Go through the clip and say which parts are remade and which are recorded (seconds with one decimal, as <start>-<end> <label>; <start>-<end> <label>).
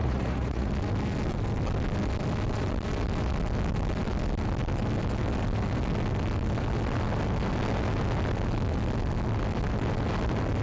0.0-0.7 remade; 0.7-10.6 recorded